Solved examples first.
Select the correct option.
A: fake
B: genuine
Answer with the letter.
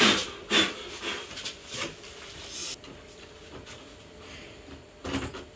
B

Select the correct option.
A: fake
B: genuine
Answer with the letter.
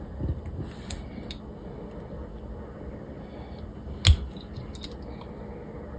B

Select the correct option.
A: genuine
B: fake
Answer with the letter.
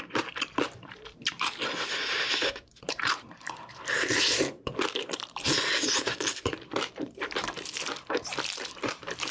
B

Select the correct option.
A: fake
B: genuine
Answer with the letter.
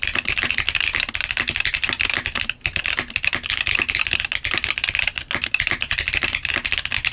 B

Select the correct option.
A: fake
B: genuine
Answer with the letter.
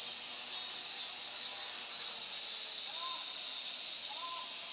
B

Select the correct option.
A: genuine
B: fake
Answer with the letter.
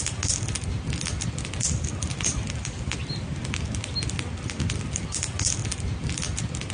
A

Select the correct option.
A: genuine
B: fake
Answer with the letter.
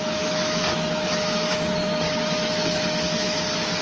B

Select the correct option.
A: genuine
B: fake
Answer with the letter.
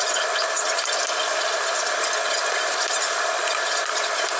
A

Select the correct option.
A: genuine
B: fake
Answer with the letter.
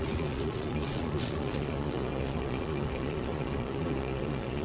B